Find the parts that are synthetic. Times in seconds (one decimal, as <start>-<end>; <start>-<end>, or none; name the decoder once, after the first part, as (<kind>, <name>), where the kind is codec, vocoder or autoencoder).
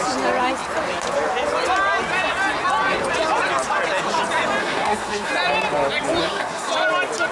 4.6-5.3 (codec, SNAC); 6.2-6.7